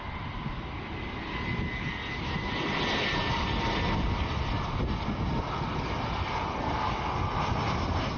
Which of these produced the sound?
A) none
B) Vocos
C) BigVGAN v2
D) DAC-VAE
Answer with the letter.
A